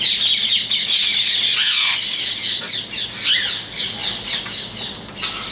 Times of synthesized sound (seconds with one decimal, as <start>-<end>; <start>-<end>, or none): none